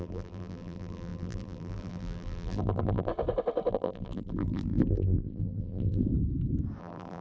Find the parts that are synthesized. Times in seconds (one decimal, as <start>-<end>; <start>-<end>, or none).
0.0-3.1; 3.7-6.1; 6.8-7.2